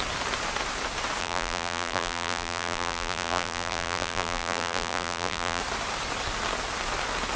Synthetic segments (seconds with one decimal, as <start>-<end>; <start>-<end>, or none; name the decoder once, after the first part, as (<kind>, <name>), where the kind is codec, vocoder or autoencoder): 1.2-5.6 (vocoder, BigVGAN v2)